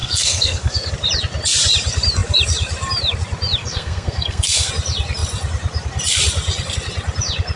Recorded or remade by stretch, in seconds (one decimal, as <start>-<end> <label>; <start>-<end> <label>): 0.0-0.9 remade; 0.9-3.6 recorded; 3.6-4.7 remade; 4.7-7.6 recorded